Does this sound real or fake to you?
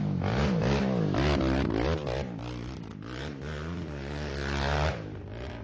real